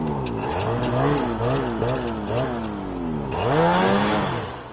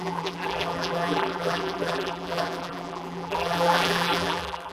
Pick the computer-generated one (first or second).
second